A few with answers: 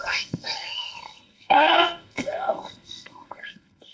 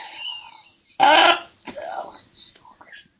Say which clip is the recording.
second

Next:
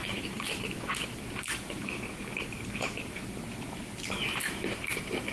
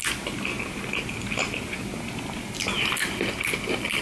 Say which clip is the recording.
second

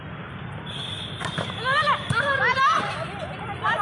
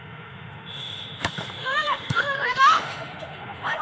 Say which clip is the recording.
first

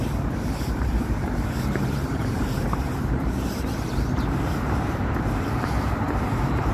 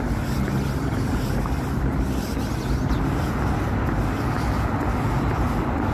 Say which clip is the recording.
second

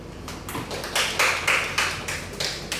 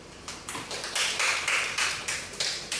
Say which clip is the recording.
first